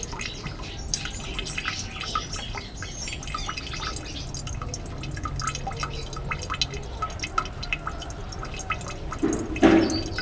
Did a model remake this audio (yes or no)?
no